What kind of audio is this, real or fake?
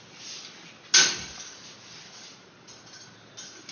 real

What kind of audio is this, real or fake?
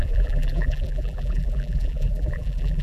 fake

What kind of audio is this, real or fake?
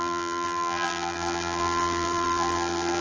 fake